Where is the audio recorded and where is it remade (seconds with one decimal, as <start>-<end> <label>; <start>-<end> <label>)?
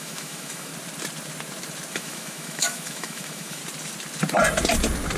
0.0-0.7 remade; 0.7-1.9 recorded; 1.9-3.6 remade; 3.6-5.2 recorded